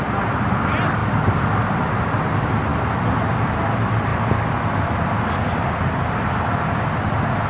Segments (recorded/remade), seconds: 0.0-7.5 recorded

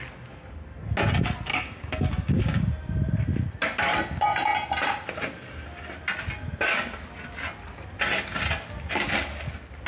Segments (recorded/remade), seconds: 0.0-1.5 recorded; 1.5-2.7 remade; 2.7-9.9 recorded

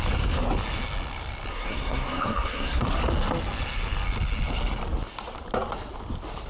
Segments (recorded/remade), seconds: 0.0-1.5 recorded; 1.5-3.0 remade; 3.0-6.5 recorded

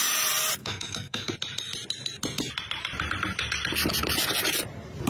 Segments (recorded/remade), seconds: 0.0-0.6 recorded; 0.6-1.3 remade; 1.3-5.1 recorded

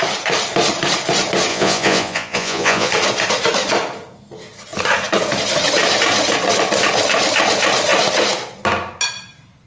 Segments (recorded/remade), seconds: 0.0-1.5 recorded; 1.5-2.9 remade; 2.9-9.7 recorded